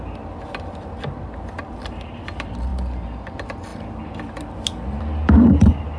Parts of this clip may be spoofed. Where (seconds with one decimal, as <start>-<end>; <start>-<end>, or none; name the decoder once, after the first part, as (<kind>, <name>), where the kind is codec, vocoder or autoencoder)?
none